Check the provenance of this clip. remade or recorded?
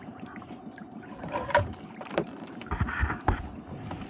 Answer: remade